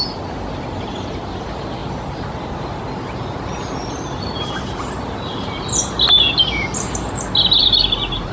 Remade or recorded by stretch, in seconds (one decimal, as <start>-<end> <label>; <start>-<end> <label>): 0.0-8.3 recorded